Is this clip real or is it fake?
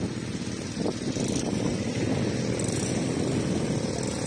real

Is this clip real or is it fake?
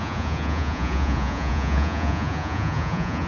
fake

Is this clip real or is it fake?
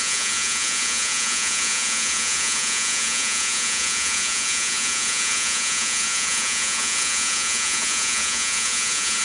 fake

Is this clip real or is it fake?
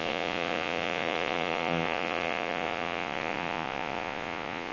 fake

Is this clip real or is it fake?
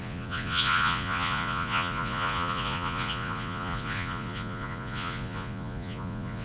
fake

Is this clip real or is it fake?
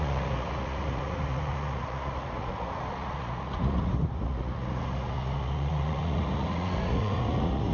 fake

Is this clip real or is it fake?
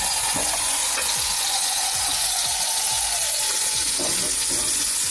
fake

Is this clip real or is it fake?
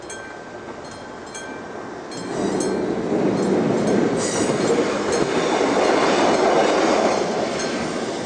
real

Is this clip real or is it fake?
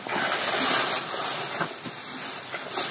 real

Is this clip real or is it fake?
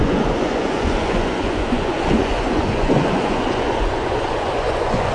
fake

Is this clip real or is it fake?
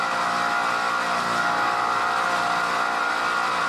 real